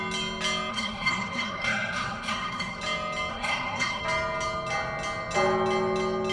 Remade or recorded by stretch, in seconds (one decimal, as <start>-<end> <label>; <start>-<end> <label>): 0.0-0.7 recorded; 0.7-2.8 remade; 2.8-3.3 recorded; 3.3-4.0 remade; 4.0-6.3 recorded